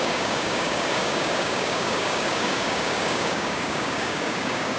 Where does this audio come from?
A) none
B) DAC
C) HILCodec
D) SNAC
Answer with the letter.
B